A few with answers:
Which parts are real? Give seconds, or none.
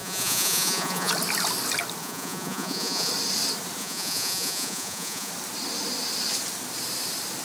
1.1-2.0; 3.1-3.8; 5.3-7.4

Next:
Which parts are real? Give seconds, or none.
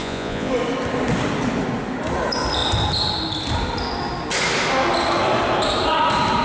0.5-6.4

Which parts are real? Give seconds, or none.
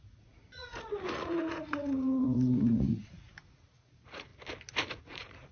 4.3-4.9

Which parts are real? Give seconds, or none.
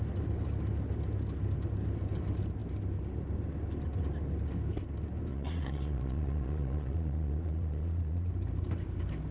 0.0-5.3; 8.3-9.3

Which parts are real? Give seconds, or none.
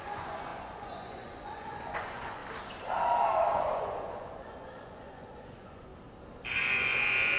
2.4-3.3; 5.9-6.6